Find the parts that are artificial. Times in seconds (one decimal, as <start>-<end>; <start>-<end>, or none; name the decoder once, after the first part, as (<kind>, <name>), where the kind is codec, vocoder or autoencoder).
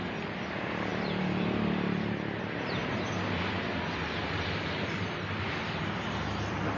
0.0-6.8 (vocoder, BigVGAN v2)